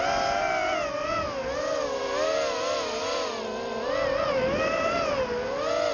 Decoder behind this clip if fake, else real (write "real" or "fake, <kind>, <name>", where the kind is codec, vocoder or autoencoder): real